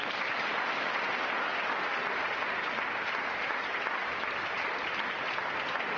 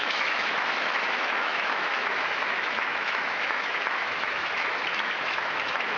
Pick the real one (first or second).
first